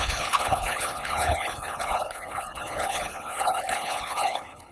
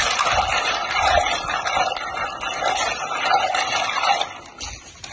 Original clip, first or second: second